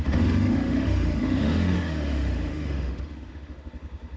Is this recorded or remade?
remade